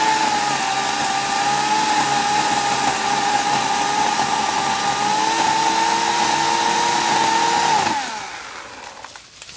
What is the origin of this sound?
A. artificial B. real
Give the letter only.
B